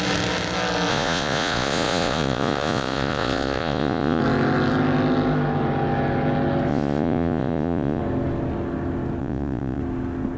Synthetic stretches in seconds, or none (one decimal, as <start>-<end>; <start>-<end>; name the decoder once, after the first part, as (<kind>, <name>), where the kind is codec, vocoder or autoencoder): 0.9-4.2 (vocoder, Vocos); 6.7-8.0; 9.2-9.8